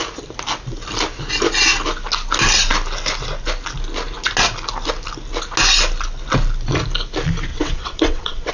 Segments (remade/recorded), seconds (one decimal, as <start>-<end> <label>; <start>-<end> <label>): 0.0-7.5 recorded; 7.5-8.5 remade